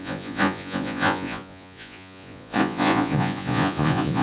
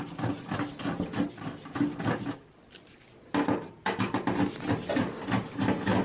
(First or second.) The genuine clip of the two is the second